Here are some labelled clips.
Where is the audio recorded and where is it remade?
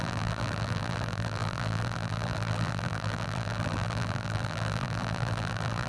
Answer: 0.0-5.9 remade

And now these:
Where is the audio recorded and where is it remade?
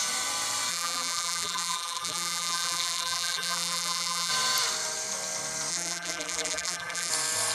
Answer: 0.0-0.7 recorded; 0.7-4.3 remade; 4.3-5.7 recorded; 5.7-7.1 remade; 7.1-7.5 recorded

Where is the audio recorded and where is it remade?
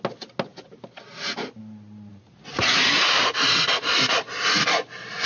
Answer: 0.0-2.1 recorded; 2.1-5.3 remade